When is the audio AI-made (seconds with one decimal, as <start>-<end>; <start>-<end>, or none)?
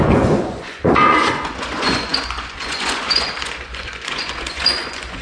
0.0-5.2